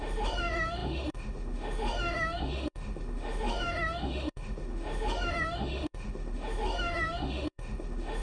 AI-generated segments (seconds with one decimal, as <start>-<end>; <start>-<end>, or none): 0.0-8.2